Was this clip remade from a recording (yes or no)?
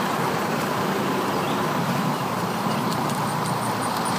yes